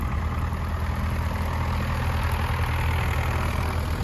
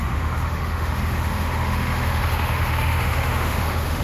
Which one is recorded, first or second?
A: first